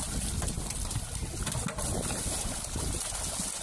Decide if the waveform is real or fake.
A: real